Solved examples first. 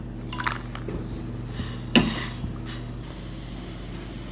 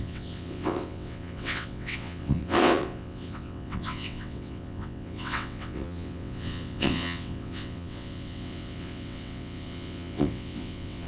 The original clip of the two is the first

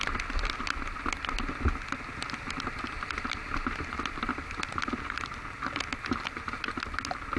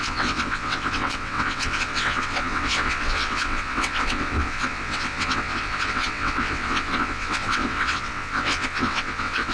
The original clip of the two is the first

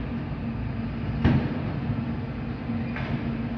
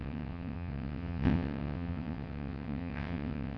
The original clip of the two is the first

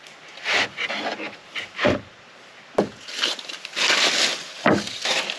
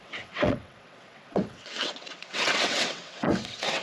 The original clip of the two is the first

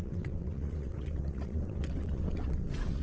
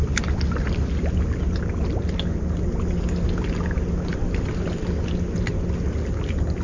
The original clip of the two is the second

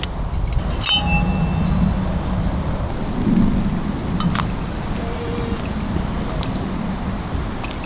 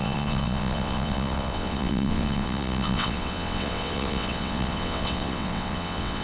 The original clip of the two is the first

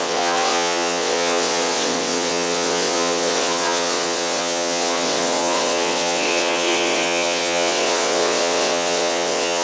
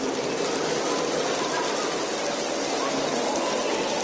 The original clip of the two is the second